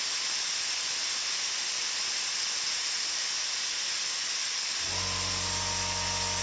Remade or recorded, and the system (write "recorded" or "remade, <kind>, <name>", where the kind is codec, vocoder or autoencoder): recorded